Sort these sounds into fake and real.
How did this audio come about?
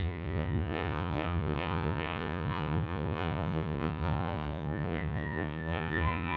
fake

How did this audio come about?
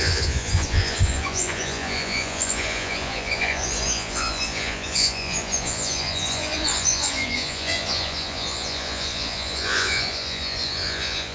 fake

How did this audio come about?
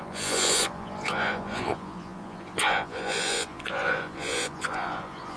fake